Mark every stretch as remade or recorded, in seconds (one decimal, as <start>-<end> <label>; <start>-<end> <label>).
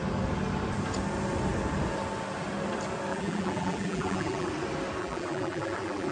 0.0-3.1 recorded; 3.1-4.5 remade; 4.5-5.0 recorded; 5.0-6.1 remade